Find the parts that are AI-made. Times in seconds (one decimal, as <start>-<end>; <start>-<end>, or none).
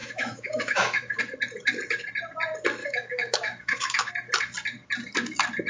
0.0-1.2; 2.8-4.1